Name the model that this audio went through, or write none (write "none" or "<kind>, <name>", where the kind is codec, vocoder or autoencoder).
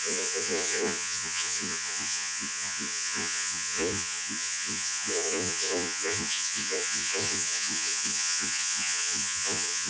vocoder, Vocos